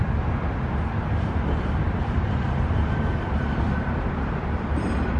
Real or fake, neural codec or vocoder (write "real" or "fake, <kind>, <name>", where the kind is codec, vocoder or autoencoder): real